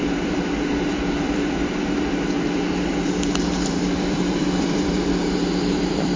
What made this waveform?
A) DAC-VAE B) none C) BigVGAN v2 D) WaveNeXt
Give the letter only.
C